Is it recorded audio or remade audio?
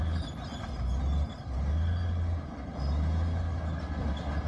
recorded